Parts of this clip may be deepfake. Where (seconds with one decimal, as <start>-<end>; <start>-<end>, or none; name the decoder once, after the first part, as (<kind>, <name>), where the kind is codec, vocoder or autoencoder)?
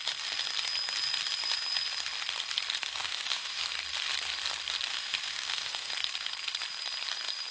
3.0-3.6 (autoencoder, DAC-VAE); 4.9-5.9